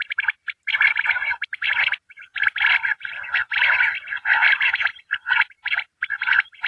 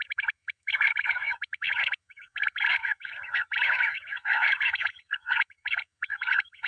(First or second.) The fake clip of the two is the second